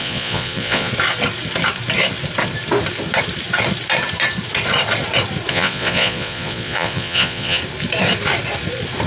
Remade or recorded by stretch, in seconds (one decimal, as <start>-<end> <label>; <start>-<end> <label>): 0.0-0.9 remade; 0.9-5.5 recorded; 5.5-7.6 remade; 7.6-9.1 recorded